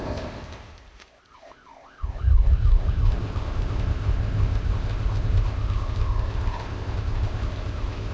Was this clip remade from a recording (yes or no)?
yes